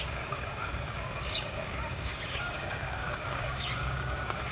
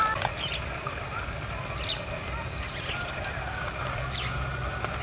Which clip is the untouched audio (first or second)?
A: second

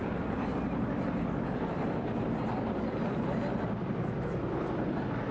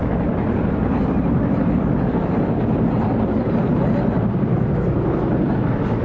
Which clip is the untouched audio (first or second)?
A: first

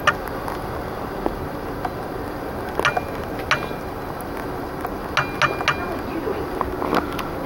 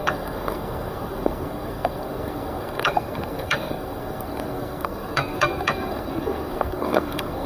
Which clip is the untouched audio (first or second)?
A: first